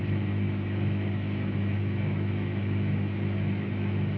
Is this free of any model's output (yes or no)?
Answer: no